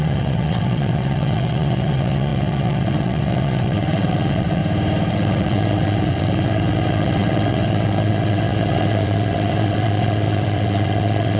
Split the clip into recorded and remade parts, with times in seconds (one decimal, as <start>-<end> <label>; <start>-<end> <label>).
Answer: 0.0-4.6 remade; 4.6-5.1 recorded; 5.1-11.4 remade